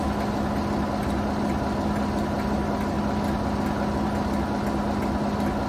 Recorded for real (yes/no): yes